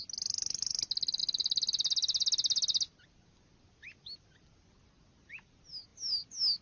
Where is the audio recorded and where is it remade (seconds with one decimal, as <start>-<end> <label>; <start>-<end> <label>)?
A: 0.0-6.6 recorded